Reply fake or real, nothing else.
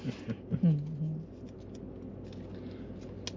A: real